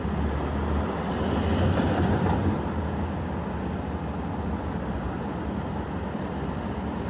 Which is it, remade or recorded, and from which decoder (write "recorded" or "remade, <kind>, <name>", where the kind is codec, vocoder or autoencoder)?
recorded